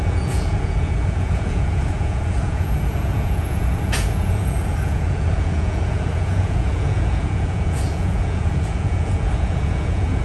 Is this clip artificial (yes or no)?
yes